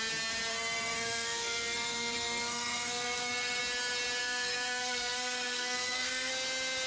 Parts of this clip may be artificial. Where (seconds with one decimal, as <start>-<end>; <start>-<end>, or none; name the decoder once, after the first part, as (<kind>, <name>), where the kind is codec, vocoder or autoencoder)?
0.5-3.6 (codec, SNAC); 4.2-6.3

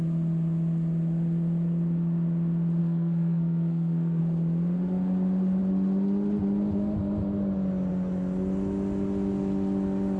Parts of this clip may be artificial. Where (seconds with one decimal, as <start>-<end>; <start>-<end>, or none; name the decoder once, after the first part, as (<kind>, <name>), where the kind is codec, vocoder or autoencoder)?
2.8-4.2 (codec, SNAC)

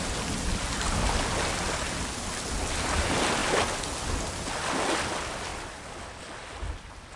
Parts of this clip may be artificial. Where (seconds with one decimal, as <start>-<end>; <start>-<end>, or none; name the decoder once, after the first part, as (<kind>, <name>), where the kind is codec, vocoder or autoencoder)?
none

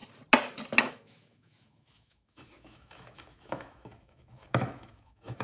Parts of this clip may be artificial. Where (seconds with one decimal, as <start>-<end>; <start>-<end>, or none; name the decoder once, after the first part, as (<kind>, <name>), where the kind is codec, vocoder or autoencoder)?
0.8-5.4 (autoencoder, DAC-VAE)

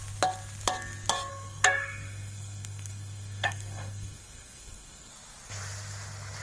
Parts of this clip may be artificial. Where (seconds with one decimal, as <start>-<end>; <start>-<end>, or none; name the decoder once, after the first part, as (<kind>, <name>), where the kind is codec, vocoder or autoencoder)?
1.3-5.1 (codec, SNAC)

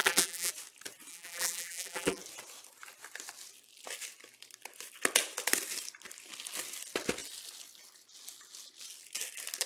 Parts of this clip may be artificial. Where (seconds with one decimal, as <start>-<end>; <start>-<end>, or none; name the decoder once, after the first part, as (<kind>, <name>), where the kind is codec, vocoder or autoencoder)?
0.0-0.5 (vocoder, BigVGAN v2); 1.1-2.2